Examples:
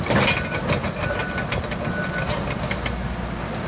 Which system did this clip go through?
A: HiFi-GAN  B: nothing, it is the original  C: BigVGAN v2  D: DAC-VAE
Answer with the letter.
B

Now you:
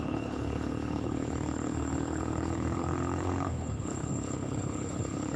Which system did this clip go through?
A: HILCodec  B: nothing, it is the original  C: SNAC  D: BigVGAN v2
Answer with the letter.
A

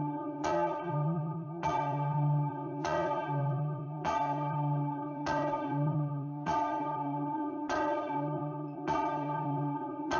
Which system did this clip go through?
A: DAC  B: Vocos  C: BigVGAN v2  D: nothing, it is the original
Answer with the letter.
B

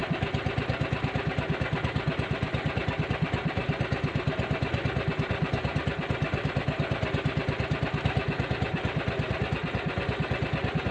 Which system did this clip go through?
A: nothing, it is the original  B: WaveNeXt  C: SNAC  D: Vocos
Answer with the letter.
A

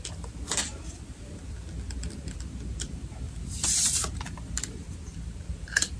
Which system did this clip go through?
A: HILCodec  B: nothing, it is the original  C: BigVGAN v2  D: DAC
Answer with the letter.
C